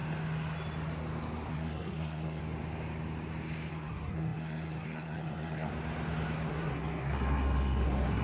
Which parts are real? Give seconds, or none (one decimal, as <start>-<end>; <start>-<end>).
0.0-1.5; 2.4-3.7; 5.7-6.5